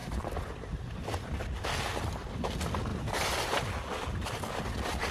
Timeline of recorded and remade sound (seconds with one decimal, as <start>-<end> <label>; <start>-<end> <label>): 0.0-1.3 remade; 1.3-2.9 recorded; 2.9-3.5 remade; 3.5-5.1 recorded